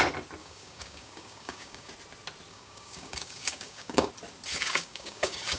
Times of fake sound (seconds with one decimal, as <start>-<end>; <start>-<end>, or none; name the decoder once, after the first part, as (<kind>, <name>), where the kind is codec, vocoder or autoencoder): 0.4-1.9 (codec, DAC); 2.5-4.1; 4.5-5.6